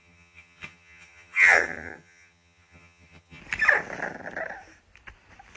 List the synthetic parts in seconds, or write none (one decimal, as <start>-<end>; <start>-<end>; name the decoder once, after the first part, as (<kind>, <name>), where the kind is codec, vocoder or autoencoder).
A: 0.0-3.4 (vocoder, HiFi-GAN)